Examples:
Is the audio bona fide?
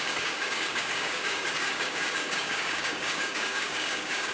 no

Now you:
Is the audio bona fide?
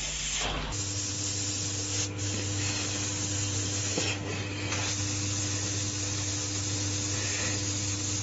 yes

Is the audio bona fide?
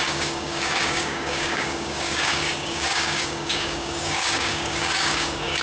no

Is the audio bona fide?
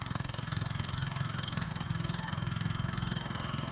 no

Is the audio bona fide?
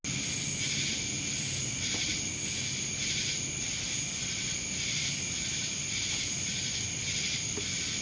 yes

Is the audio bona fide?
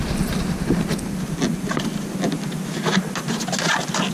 yes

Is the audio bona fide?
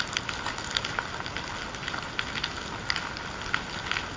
yes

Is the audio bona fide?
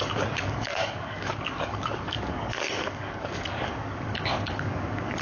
no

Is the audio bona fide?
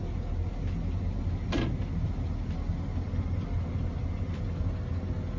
yes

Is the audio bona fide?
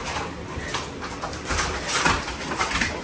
yes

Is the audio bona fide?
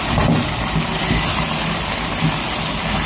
yes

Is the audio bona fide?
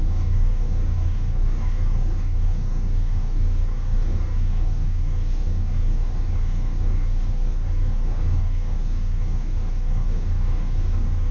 no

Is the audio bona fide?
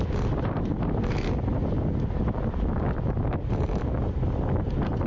yes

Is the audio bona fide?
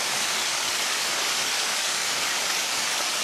no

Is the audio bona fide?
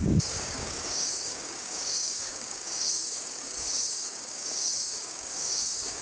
no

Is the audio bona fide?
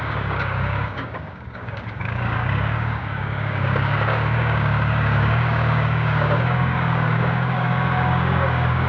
no